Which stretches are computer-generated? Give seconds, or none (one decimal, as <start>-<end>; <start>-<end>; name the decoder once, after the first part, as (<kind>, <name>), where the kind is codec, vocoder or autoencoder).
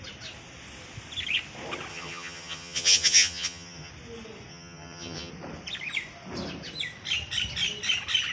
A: 1.9-3.9 (vocoder, HiFi-GAN); 4.5-5.3